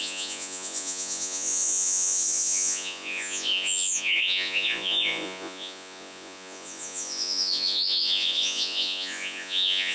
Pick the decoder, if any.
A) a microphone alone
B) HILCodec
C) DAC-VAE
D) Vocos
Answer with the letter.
D